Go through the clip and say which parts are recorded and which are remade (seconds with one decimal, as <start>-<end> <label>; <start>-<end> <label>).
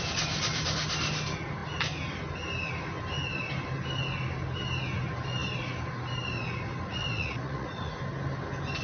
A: 0.0-6.9 recorded; 6.9-7.9 remade; 7.9-8.8 recorded